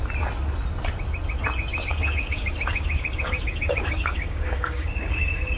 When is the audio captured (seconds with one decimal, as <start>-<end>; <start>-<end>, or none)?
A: 0.0-1.9

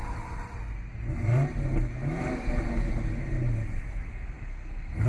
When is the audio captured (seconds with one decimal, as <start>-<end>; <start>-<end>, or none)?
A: 0.0-4.1

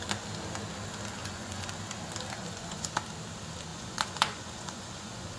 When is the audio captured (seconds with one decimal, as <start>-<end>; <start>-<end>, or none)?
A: 0.0-1.2; 1.7-2.4; 2.9-3.7